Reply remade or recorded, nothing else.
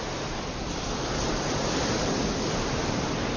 recorded